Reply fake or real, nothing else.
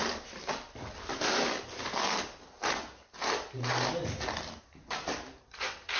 real